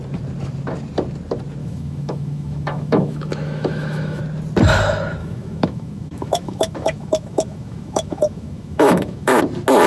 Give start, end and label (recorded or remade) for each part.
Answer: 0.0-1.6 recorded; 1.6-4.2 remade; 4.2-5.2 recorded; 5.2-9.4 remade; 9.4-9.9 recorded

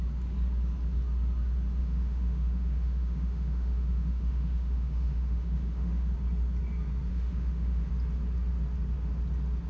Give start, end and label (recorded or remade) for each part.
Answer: 0.0-1.8 recorded; 1.8-6.1 remade; 6.1-7.1 recorded; 7.1-7.9 remade; 7.9-9.7 recorded

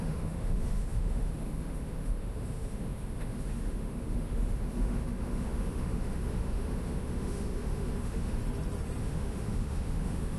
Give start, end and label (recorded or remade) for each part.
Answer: 0.0-8.4 remade; 8.4-9.0 recorded; 9.0-10.4 remade

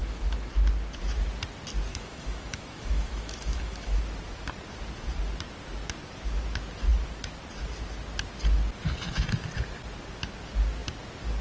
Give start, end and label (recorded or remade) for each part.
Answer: 0.0-0.5 remade; 0.5-1.9 recorded; 1.9-4.0 remade; 4.0-11.4 recorded